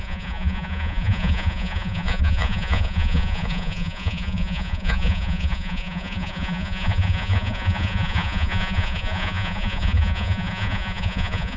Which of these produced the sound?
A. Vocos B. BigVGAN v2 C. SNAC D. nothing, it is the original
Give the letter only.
A